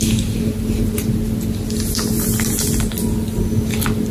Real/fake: real